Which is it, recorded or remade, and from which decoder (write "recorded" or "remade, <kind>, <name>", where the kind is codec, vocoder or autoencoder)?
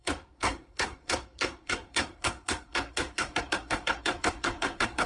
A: remade, codec, SNAC